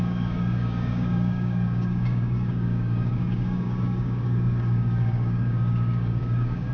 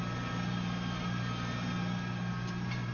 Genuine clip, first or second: second